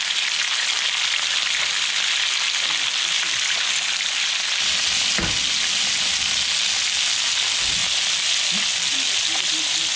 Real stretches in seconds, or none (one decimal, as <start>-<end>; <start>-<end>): 0.0-10.0